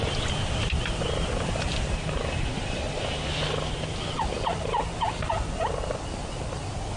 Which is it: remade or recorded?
recorded